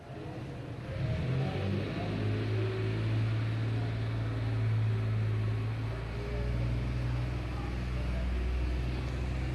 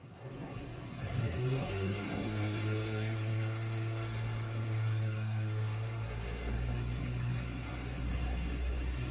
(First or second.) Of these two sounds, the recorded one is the first